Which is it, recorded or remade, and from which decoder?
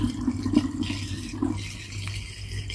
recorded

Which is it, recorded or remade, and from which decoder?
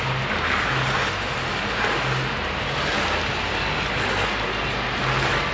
recorded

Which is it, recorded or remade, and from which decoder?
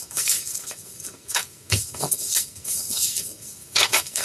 remade, codec, SNAC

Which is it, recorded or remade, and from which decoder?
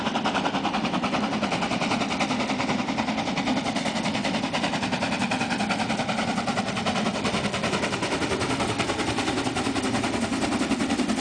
remade, vocoder, BigVGAN v2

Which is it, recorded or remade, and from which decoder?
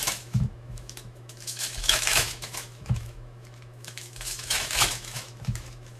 remade, autoencoder, DAC-VAE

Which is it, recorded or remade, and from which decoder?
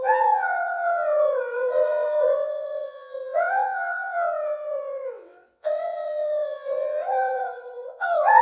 remade, vocoder, WaveNeXt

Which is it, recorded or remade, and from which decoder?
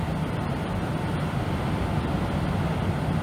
recorded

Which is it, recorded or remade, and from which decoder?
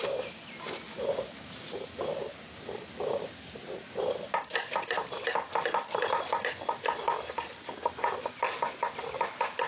recorded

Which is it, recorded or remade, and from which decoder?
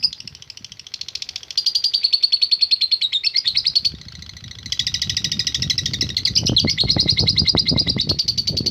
recorded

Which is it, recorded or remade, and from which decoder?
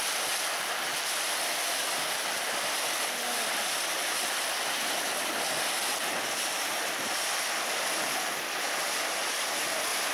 recorded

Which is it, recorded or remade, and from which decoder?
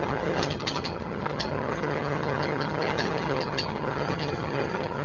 remade, vocoder, HiFi-GAN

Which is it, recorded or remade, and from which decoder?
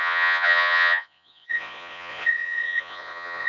remade, vocoder, Vocos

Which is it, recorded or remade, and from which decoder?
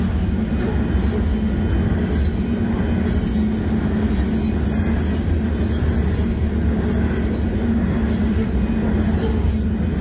recorded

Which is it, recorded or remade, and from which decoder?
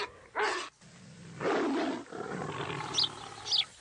recorded